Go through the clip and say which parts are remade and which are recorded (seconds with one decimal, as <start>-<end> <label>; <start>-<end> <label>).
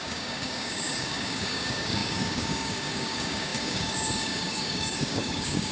0.0-5.7 remade